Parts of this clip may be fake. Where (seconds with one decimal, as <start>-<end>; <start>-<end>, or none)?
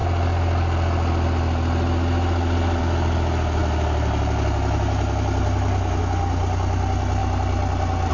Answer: none